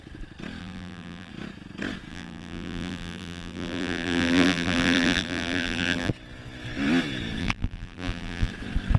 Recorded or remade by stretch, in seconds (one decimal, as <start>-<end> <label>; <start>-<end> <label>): 0.0-0.6 recorded; 0.6-1.3 remade; 1.3-2.1 recorded; 2.1-6.1 remade; 6.1-7.4 recorded; 7.4-8.5 remade; 8.5-9.0 recorded

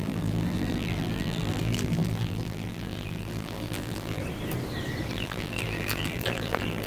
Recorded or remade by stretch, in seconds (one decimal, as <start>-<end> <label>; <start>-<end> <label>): 0.0-4.2 remade; 4.2-5.1 recorded; 5.1-6.9 remade

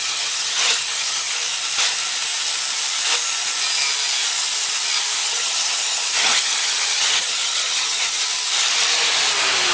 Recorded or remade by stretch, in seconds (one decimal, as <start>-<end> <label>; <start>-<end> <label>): 0.0-1.3 remade; 1.3-5.2 recorded; 5.2-8.2 remade; 8.2-9.7 recorded

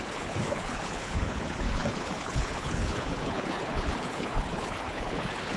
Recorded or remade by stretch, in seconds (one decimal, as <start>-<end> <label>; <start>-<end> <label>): 0.0-5.6 remade

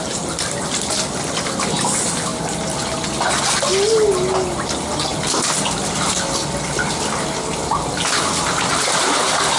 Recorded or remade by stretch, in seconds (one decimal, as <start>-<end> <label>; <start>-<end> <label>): 0.0-9.6 recorded

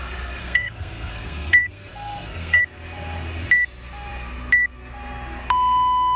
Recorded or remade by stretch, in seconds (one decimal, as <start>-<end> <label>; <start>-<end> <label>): 0.0-0.4 recorded; 0.4-2.6 remade; 2.6-6.2 recorded

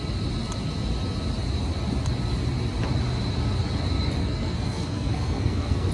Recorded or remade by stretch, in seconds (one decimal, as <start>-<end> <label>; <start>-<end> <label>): 0.0-4.2 recorded; 4.2-5.9 remade